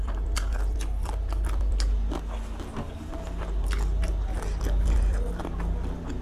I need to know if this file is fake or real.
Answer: real